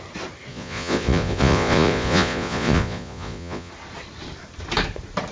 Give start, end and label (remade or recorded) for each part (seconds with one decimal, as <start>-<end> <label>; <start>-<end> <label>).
0.0-0.5 recorded; 0.5-3.7 remade; 3.7-5.3 recorded